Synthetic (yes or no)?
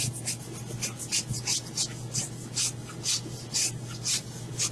no